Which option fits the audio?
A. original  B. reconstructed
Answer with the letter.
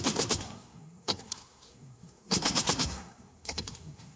B